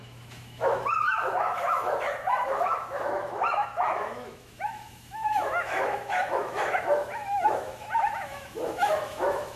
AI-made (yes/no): yes